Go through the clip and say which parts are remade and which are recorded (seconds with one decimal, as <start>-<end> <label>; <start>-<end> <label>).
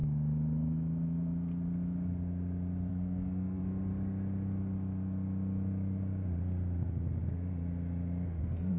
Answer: 0.0-2.9 recorded; 2.9-3.6 remade; 3.6-8.4 recorded; 8.4-8.8 remade